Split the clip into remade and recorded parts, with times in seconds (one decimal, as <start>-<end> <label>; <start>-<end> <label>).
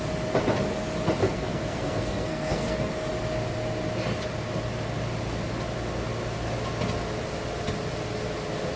0.0-1.2 recorded; 1.2-2.9 remade; 2.9-8.8 recorded